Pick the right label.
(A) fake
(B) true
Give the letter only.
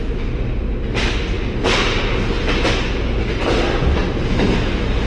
B